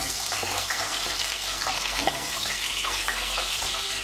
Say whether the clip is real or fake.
fake